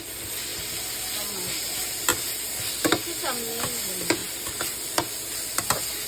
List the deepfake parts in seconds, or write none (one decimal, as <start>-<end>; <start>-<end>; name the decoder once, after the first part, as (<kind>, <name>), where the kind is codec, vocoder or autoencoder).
none